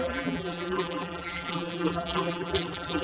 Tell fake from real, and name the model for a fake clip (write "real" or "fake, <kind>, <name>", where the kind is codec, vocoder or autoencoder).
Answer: fake, vocoder, BigVGAN v2